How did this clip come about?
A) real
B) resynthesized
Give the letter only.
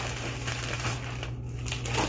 A